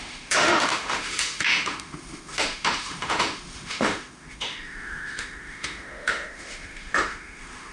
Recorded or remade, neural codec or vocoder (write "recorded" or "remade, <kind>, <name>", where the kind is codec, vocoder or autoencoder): remade, autoencoder, DAC-VAE